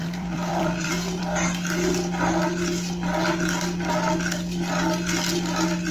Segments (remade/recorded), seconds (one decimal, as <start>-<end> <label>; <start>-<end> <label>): 0.0-1.2 remade; 1.2-5.9 recorded